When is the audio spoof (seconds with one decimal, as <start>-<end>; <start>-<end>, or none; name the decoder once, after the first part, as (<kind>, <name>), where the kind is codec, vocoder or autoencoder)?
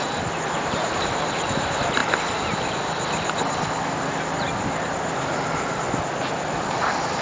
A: 0.0-2.0 (vocoder, BigVGAN v2); 6.3-7.2